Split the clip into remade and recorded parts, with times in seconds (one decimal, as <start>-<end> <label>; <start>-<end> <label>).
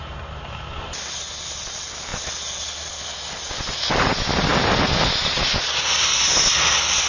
0.0-7.1 recorded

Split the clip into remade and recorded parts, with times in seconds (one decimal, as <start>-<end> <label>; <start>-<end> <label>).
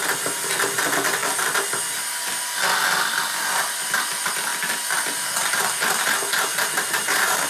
0.0-6.5 recorded; 6.5-7.5 remade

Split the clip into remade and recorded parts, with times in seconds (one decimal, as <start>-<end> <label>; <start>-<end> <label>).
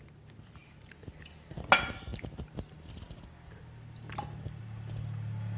0.0-5.6 recorded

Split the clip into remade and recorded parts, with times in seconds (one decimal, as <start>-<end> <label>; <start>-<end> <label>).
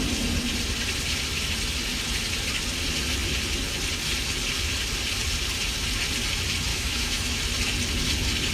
0.0-6.7 recorded; 6.7-7.4 remade; 7.4-8.5 recorded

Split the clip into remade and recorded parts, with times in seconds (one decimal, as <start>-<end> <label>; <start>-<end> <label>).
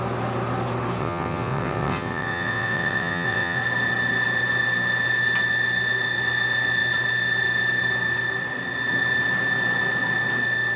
0.0-1.0 recorded; 1.0-3.6 remade; 3.6-10.8 recorded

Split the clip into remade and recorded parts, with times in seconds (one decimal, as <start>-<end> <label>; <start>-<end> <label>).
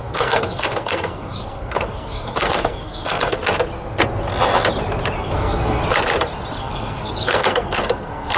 0.0-3.4 remade; 3.4-5.2 recorded; 5.2-5.8 remade; 5.8-6.6 recorded; 6.6-8.4 remade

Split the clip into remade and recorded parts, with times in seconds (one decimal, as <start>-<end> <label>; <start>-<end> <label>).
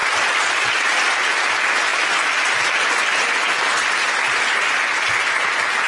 0.0-1.0 remade; 1.0-1.9 recorded; 1.9-2.6 remade; 2.6-3.1 recorded; 3.1-5.1 remade; 5.1-5.9 recorded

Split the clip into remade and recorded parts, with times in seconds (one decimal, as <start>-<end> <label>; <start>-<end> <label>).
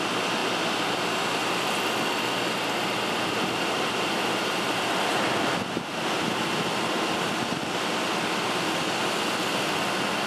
0.0-10.3 recorded